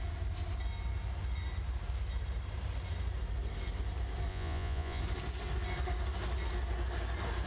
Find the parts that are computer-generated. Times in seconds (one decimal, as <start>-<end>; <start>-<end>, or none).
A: 4.3-5.0